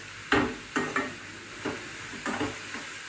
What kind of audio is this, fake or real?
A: real